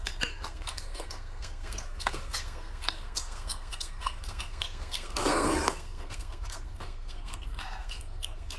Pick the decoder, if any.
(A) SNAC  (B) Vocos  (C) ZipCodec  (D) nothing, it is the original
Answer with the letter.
A